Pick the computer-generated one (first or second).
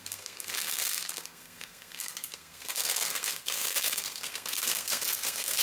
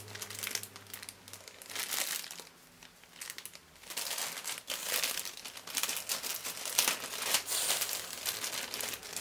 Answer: first